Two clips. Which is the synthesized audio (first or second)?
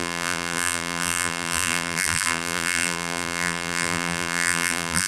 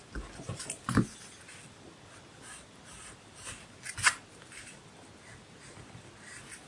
first